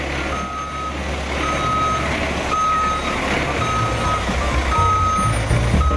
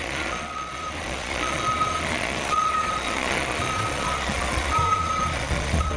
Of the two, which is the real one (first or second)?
first